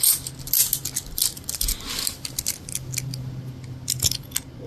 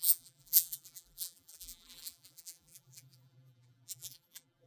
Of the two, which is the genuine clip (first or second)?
first